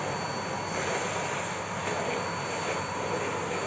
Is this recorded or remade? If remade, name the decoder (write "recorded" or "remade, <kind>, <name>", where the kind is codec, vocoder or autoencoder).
recorded